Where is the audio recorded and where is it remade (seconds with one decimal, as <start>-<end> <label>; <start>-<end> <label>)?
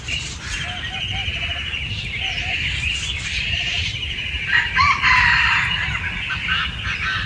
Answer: 0.0-1.2 recorded; 1.2-5.0 remade; 5.0-7.3 recorded